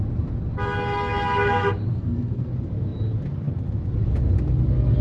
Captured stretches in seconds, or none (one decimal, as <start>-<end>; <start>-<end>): 0.0-1.9; 2.5-5.0